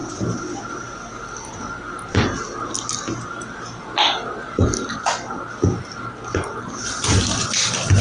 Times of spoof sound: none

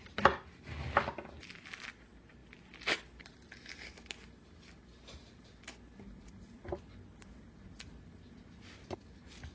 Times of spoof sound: none

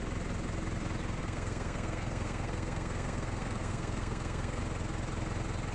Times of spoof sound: 1.2-4.6

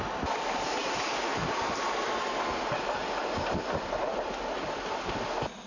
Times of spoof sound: none

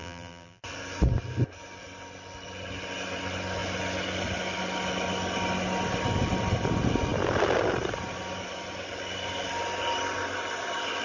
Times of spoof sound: 0.0-0.6